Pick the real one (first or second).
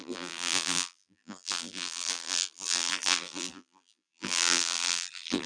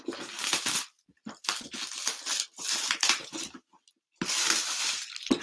second